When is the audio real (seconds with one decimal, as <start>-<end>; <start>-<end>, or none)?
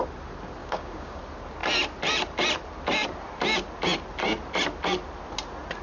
0.0-0.6; 1.2-5.8